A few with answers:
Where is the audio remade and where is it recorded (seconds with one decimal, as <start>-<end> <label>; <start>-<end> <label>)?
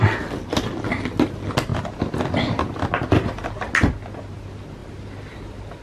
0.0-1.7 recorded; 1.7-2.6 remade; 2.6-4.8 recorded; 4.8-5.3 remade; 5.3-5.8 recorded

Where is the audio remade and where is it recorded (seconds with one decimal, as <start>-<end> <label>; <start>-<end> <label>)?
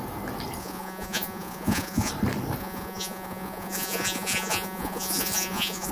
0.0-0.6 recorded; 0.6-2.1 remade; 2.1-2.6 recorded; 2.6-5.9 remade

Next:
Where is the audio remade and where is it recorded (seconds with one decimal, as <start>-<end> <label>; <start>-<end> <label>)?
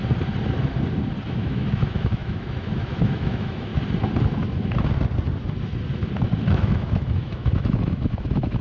0.0-1.3 recorded; 1.3-3.7 remade; 3.7-6.5 recorded; 6.5-8.6 remade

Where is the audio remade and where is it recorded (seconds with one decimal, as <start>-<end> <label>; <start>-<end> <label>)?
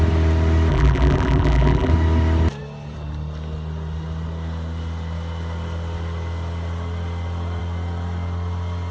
0.0-0.7 recorded; 0.7-1.9 remade; 1.9-8.9 recorded